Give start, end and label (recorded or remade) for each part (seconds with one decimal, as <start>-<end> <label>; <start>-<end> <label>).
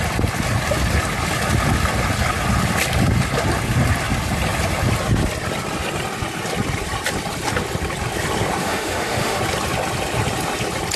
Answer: 0.0-8.6 recorded; 8.6-9.4 remade; 9.4-11.0 recorded